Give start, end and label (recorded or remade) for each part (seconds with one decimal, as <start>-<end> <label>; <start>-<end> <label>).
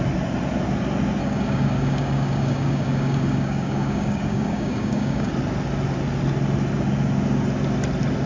0.0-1.2 recorded; 1.2-5.3 remade; 5.3-8.3 recorded